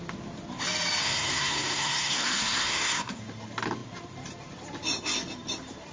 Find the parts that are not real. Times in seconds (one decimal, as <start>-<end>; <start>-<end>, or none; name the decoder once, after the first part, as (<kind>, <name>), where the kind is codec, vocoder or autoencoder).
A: 1.0-3.2 (codec, SNAC)